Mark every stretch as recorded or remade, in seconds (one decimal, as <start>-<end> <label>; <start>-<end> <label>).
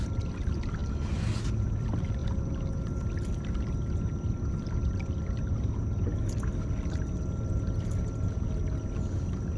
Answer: 0.0-9.6 recorded